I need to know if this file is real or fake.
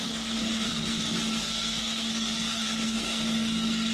fake